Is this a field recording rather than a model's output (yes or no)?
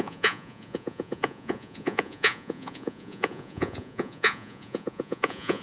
no